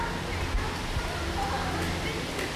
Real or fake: real